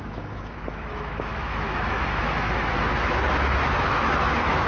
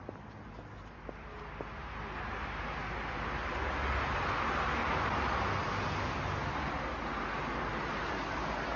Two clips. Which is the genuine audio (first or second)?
second